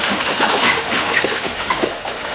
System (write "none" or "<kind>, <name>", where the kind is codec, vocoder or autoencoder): autoencoder, DAC-VAE